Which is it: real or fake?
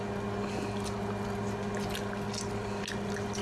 real